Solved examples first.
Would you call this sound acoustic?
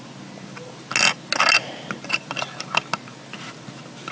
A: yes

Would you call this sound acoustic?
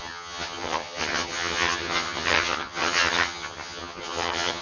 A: no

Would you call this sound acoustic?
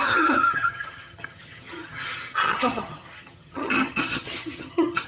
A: no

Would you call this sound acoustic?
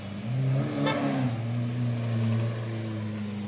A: yes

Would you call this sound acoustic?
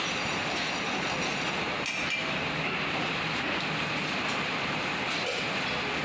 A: yes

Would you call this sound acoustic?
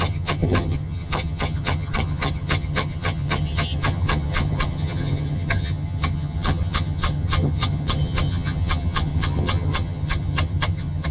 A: no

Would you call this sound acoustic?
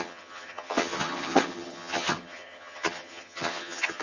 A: no